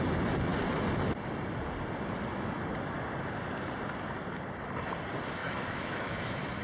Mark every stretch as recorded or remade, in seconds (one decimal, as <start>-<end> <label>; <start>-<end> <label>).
0.0-5.4 recorded; 5.4-6.6 remade